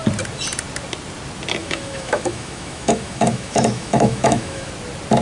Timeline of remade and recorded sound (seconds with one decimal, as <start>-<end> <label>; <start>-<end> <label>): 0.0-1.6 recorded; 1.6-4.7 remade; 4.7-5.2 recorded